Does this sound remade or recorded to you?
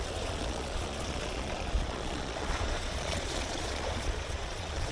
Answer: remade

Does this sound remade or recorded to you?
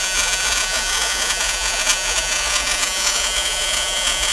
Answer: remade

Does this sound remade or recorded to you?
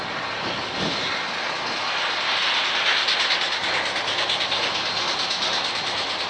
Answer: recorded